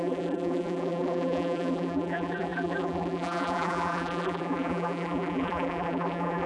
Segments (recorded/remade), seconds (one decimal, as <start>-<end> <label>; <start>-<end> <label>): 0.0-6.5 remade